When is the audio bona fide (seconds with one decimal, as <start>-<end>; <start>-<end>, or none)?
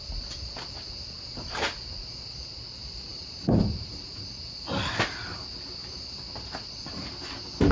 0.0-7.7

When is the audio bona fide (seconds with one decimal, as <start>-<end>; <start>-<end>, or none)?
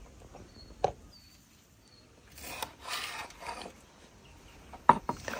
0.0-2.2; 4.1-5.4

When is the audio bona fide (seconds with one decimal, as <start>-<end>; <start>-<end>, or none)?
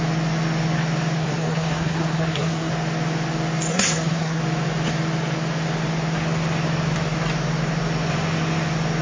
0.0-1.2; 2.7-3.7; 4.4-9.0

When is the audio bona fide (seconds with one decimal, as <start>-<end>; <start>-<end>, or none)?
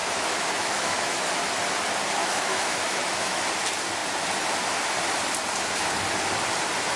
1.4-2.2; 3.4-7.0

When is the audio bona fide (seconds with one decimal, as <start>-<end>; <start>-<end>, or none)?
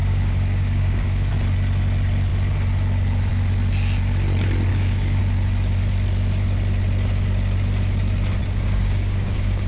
1.3-4.7; 5.2-8.4